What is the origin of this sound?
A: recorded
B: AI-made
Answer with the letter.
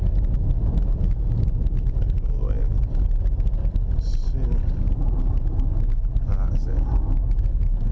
A